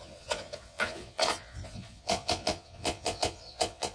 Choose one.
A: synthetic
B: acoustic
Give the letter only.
A